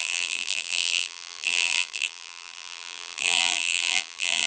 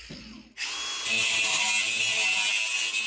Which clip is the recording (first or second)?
second